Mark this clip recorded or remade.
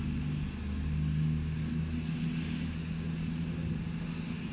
recorded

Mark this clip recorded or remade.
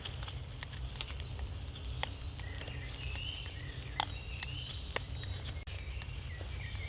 recorded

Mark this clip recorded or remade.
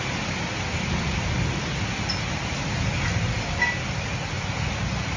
recorded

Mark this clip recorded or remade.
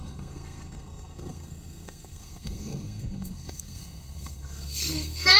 remade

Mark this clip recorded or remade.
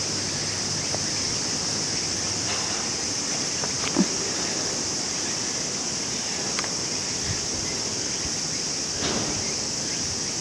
recorded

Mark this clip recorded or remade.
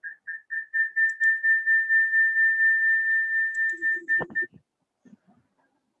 recorded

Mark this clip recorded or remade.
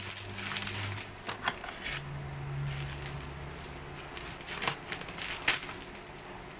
recorded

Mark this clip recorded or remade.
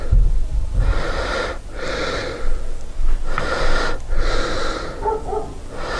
recorded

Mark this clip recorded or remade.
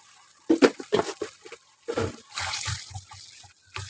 recorded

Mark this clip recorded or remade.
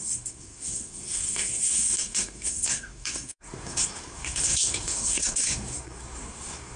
remade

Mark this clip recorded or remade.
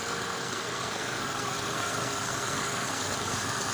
remade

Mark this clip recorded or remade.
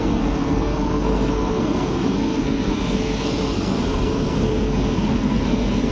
remade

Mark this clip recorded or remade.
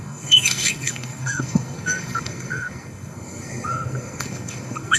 remade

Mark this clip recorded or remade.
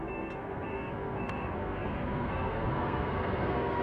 remade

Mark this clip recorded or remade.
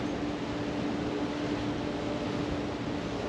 recorded